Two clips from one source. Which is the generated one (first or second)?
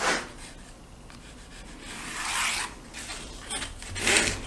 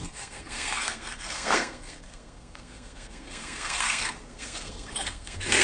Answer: second